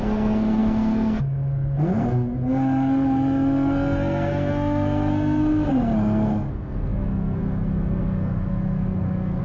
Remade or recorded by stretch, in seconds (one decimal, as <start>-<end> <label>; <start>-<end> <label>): 0.0-9.4 remade